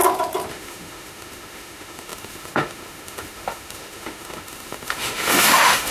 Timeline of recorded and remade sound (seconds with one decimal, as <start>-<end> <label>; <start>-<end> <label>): 0.0-0.5 recorded; 0.5-5.9 remade